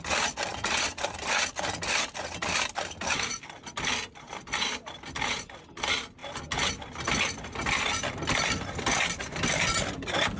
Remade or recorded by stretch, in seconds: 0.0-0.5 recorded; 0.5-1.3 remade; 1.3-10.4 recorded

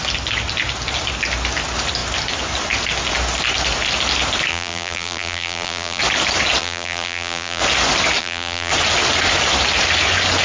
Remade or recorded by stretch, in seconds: 0.0-4.5 recorded; 4.5-6.0 remade; 6.0-6.6 recorded; 6.6-7.6 remade; 7.6-8.2 recorded; 8.2-8.7 remade; 8.7-10.4 recorded

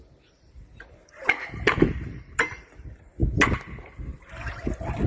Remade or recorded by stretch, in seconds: 0.0-3.2 remade; 3.2-4.3 recorded; 4.3-5.1 remade

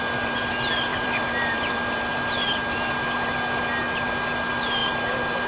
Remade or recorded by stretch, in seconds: 0.0-0.9 recorded; 0.9-2.1 remade; 2.1-5.5 recorded

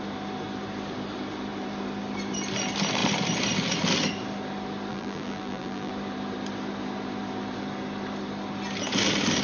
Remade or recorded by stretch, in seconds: 0.0-4.9 recorded; 4.9-5.9 remade; 5.9-9.4 recorded

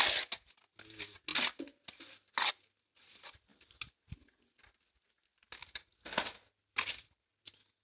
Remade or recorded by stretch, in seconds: 0.0-7.8 recorded

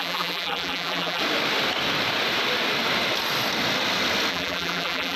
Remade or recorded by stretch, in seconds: 0.0-1.2 remade; 1.2-4.3 recorded; 4.3-5.2 remade